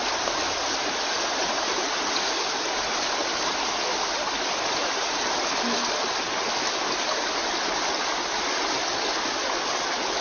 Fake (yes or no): no